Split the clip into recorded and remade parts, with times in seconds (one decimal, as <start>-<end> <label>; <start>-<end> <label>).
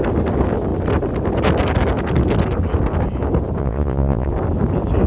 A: 0.0-3.6 recorded; 3.6-4.3 remade; 4.3-5.1 recorded